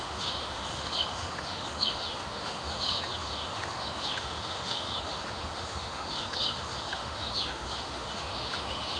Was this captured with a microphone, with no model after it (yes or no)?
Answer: no